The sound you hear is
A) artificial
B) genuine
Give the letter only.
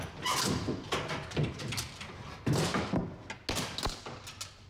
B